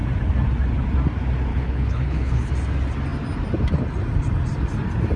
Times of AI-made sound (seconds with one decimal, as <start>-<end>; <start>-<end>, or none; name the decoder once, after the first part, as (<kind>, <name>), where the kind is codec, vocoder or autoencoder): 1.5-2.5 (codec, HILCodec)